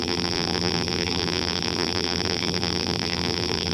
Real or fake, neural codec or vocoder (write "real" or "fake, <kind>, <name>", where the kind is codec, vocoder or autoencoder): fake, vocoder, BigVGAN v2